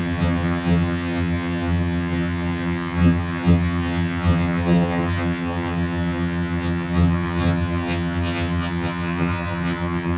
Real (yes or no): no